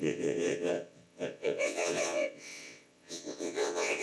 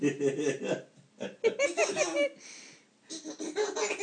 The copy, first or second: first